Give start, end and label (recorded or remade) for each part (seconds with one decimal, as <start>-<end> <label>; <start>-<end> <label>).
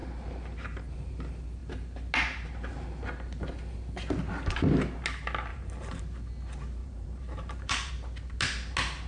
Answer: 0.0-5.5 recorded; 5.5-6.0 remade; 6.0-6.8 recorded; 6.8-7.9 remade; 7.9-9.1 recorded